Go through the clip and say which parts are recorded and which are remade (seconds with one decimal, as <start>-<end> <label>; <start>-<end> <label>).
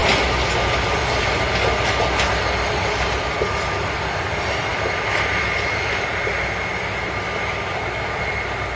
0.0-8.8 recorded